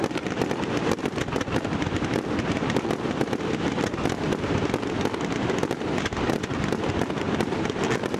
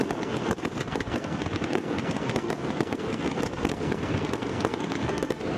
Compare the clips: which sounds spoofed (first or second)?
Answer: second